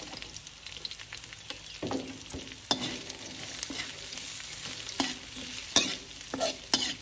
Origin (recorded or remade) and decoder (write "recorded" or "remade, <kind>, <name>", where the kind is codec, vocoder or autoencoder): recorded